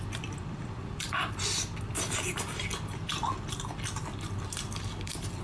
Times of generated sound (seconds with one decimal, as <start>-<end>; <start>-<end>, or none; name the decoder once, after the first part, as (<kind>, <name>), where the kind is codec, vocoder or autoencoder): 0.0-5.4 (vocoder, BigVGAN v2)